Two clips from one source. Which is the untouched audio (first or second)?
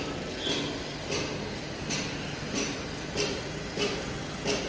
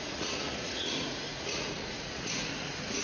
first